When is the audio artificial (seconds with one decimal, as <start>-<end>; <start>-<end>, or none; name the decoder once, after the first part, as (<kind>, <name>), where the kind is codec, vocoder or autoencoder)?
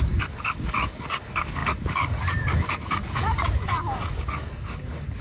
0.0-5.2 (codec, DAC)